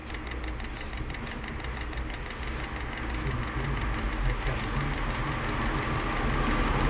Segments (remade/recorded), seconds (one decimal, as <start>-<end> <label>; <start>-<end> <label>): 0.0-6.9 recorded